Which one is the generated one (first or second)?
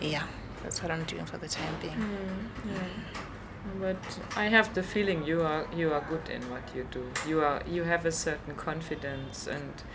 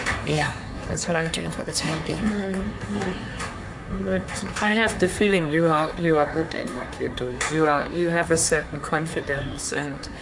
second